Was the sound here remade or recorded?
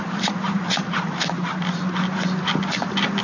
recorded